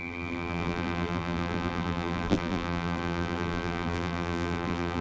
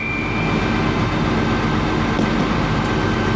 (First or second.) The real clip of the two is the second